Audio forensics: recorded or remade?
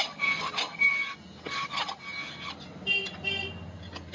recorded